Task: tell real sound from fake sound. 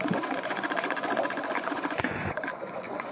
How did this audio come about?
fake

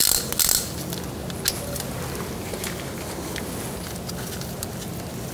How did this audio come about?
real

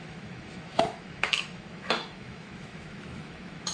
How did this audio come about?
fake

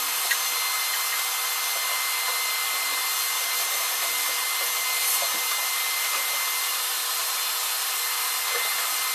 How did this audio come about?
real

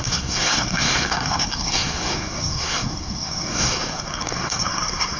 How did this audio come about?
fake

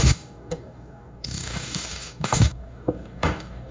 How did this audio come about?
fake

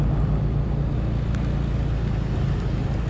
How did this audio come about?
real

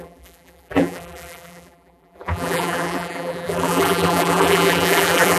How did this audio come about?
fake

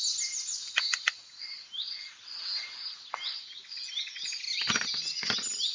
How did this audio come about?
real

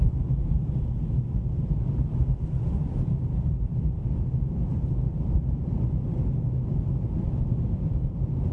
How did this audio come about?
fake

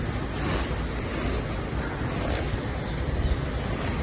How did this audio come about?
real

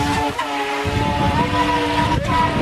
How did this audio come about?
real